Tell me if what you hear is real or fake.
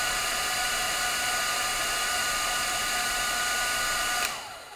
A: fake